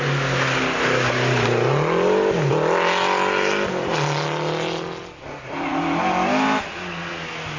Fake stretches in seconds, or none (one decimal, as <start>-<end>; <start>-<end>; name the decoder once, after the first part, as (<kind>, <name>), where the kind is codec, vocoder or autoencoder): none